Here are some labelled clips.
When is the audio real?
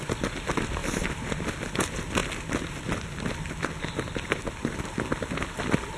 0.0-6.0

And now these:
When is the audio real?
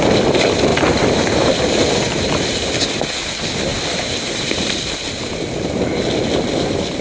0.0-0.7; 2.9-3.7; 5.3-7.0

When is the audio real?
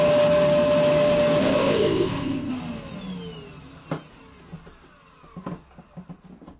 0.0-1.4; 2.5-6.6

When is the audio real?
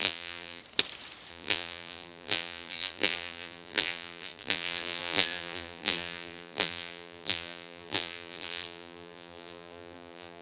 0.6-1.3